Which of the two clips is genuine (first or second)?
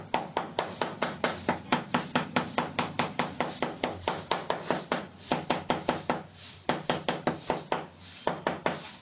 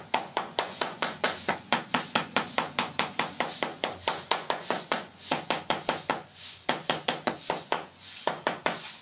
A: first